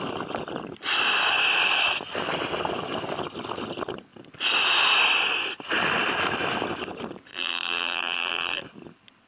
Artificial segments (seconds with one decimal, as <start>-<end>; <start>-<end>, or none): 7.3-8.6